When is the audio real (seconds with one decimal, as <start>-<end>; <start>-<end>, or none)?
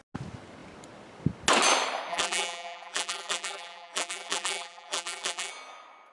0.0-2.1; 5.5-6.1